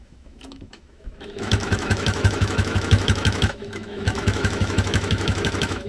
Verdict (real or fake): fake